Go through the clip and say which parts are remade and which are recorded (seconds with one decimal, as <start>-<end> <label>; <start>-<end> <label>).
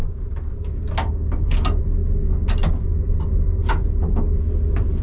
0.0-0.9 remade; 0.9-5.0 recorded